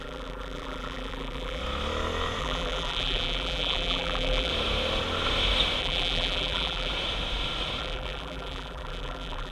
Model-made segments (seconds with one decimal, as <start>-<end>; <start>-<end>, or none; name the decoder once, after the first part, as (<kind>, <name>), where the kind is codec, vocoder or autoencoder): 0.0-1.6 (vocoder, BigVGAN v2); 2.4-4.5; 5.8-6.9; 7.8-9.5